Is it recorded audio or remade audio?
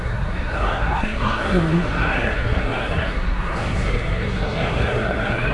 remade